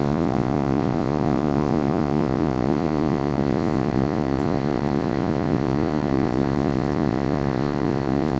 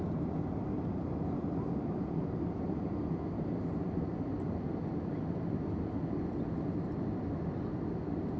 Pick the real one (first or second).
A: second